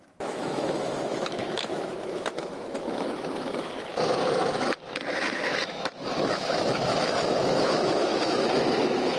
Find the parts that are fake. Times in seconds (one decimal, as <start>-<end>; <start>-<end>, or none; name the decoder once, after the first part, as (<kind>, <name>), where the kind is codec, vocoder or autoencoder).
0.0-3.9 (autoencoder, DAC-VAE); 5.1-9.2